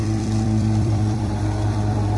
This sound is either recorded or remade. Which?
remade